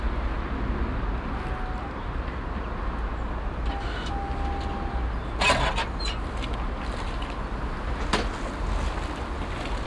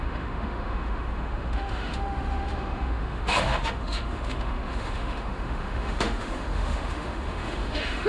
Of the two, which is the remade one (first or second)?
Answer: second